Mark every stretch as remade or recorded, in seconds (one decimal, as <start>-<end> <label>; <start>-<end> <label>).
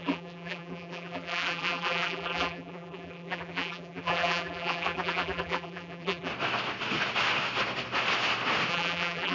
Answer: 0.0-6.3 remade; 6.3-8.7 recorded; 8.7-9.3 remade